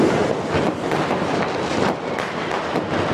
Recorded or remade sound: recorded